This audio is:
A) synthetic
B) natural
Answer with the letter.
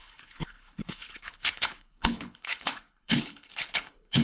A